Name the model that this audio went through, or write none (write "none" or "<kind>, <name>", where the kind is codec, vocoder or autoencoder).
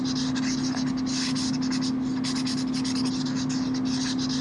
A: none